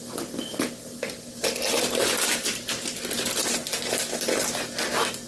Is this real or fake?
real